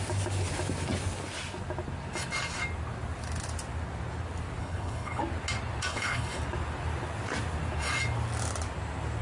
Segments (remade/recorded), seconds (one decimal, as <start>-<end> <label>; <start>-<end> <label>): 0.0-4.6 recorded; 4.6-5.2 remade; 5.2-5.9 recorded; 5.9-6.4 remade; 6.4-9.2 recorded